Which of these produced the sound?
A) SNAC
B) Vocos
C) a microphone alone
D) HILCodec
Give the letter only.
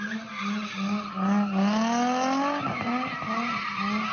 C